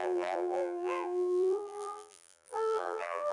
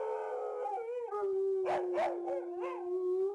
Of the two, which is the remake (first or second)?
first